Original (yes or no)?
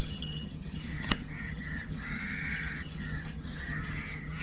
no